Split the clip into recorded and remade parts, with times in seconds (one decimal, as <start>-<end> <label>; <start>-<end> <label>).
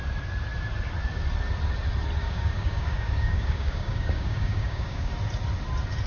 0.0-2.2 recorded; 2.2-5.1 remade; 5.1-6.1 recorded